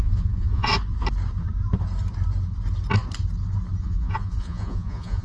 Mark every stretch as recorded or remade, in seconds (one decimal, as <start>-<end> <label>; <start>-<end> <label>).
0.0-0.7 remade; 0.7-3.8 recorded; 3.8-5.2 remade